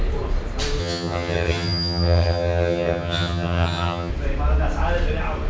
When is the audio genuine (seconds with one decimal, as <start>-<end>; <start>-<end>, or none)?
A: 0.0-0.8; 4.1-5.5